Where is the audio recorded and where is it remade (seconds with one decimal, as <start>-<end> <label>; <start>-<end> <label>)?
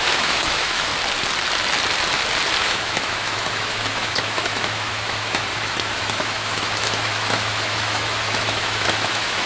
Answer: 0.0-0.9 remade; 0.9-2.6 recorded; 2.6-9.5 remade